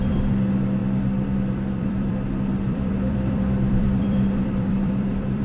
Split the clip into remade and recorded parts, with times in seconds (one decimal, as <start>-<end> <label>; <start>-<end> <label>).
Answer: 0.0-0.8 remade; 0.8-1.5 recorded; 1.5-5.4 remade

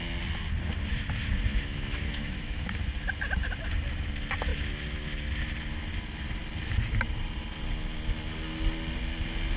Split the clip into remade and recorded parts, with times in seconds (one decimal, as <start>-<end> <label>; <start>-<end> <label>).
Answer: 0.0-1.5 recorded; 1.5-2.7 remade; 2.7-9.6 recorded

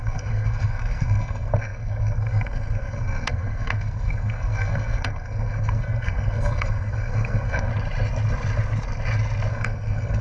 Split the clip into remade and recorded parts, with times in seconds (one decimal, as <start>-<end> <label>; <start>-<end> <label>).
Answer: 0.0-7.7 remade; 7.7-9.5 recorded; 9.5-10.2 remade